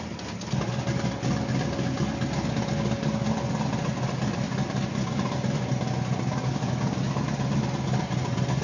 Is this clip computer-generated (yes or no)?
no